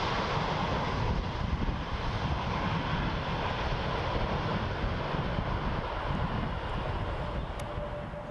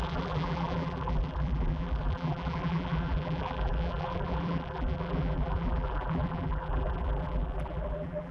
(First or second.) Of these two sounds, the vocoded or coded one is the second